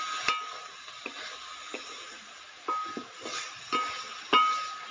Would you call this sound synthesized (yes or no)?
no